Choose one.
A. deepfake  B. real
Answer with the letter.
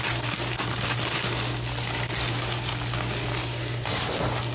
B